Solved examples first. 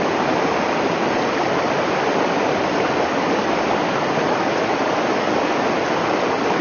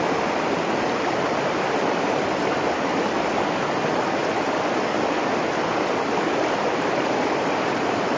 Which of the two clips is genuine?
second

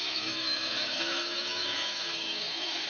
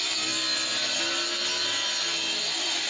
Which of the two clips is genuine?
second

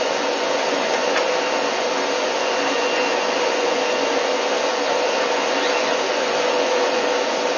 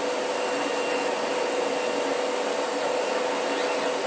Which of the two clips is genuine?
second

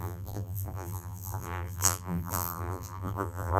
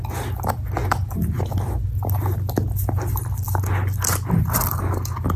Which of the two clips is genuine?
second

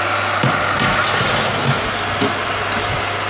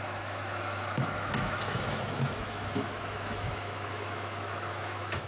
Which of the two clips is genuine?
first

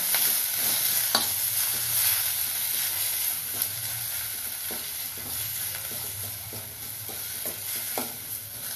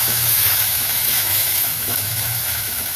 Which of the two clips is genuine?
first